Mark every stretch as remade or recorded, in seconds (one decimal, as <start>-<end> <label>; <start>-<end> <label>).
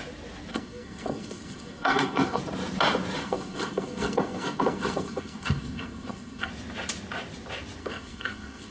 0.0-0.5 recorded; 0.5-2.4 remade; 2.4-3.2 recorded; 3.2-6.5 remade; 6.5-7.8 recorded; 7.8-8.7 remade